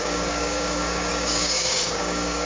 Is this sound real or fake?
fake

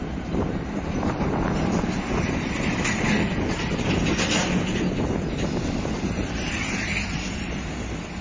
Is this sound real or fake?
real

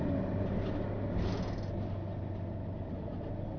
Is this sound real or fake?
real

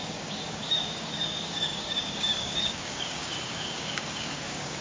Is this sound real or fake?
fake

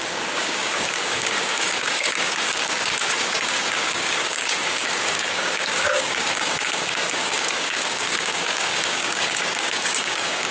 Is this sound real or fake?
fake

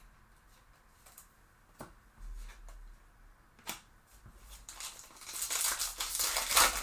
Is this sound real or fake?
real